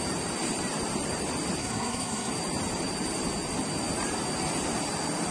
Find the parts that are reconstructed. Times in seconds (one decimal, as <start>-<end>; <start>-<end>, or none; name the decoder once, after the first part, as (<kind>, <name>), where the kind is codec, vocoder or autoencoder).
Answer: 1.6-2.3 (codec, SNAC)